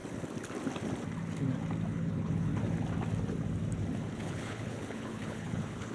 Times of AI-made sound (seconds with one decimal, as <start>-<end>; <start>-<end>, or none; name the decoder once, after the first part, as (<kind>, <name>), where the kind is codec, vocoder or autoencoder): 1.9-2.5 (codec, HILCodec); 4.1-5.9

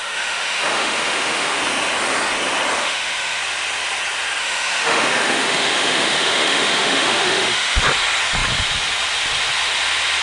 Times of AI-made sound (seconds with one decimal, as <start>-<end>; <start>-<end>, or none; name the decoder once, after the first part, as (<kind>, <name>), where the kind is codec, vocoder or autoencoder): 0.0-1.6 (autoencoder, DAC-VAE); 2.8-3.4; 4.4-7.8

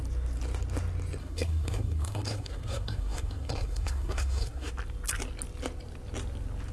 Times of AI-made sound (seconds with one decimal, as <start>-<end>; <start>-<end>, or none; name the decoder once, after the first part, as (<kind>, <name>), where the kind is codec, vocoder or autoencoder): 1.2-4.7 (codec, SNAC)

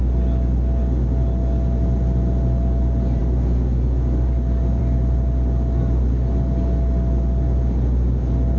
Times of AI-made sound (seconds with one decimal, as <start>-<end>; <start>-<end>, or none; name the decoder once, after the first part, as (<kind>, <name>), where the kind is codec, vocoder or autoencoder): none

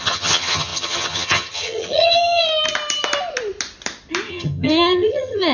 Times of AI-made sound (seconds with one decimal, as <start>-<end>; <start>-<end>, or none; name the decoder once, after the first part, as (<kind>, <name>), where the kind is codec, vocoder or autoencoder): 0.0-2.4 (vocoder, HiFi-GAN); 4.3-5.5

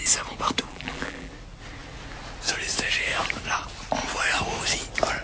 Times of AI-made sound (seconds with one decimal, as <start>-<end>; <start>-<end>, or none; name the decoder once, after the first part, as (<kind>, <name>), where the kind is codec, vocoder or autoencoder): 0.7-1.3 (vocoder, BigVGAN v2)

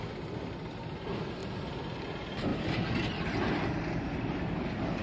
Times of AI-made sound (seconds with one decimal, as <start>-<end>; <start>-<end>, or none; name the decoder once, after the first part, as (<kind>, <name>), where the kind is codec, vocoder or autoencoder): 1.4-2.0 (vocoder, BigVGAN v2); 2.5-4.2